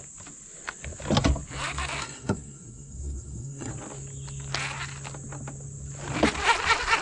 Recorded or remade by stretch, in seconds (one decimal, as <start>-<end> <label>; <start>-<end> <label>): 0.0-2.0 recorded; 2.0-3.7 remade; 3.7-7.0 recorded